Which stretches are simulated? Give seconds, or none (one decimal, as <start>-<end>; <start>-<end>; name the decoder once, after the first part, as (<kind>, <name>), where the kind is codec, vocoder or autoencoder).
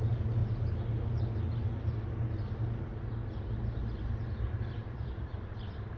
4.8-6.0 (vocoder, BigVGAN v2)